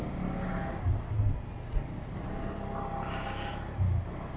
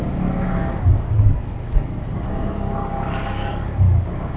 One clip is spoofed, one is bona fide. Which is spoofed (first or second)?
second